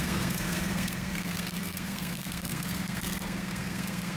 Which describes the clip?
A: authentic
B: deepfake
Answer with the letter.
B